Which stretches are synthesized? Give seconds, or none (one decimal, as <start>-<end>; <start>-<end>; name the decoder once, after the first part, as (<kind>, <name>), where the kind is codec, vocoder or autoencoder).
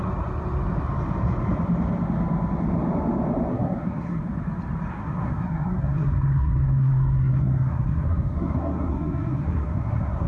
3.5-4.2 (codec, SNAC); 4.9-10.3